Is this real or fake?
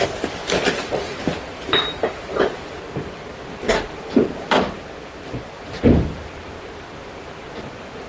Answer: fake